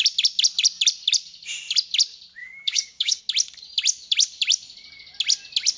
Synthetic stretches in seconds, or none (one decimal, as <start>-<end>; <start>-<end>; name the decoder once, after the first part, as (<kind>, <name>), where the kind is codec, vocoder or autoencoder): 2.4-3.2 (codec, DAC)